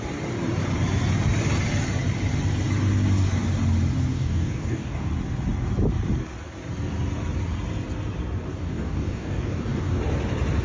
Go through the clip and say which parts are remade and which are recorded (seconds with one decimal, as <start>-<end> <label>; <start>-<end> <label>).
0.0-4.1 recorded; 4.1-5.1 remade; 5.1-8.5 recorded; 8.5-10.0 remade; 10.0-10.6 recorded